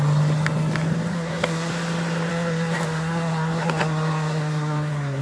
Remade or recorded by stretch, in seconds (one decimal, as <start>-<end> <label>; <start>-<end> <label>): 0.0-1.1 recorded; 1.1-1.7 remade; 1.7-2.3 recorded; 2.3-5.2 remade